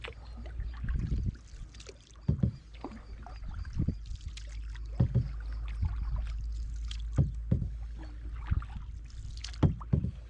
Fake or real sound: real